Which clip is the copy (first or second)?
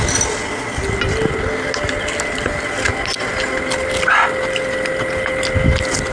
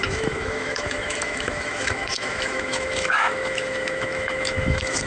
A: second